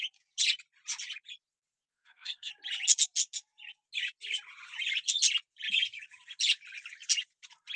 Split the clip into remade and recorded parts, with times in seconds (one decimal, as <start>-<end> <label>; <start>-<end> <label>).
0.0-1.9 recorded; 1.9-2.5 remade; 2.5-7.8 recorded